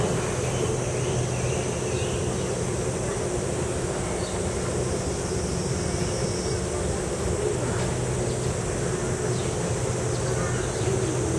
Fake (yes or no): no